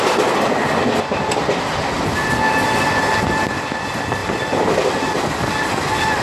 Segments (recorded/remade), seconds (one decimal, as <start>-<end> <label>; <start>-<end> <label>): 0.0-6.2 recorded